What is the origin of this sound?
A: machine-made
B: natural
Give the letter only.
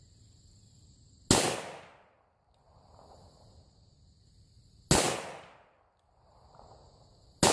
B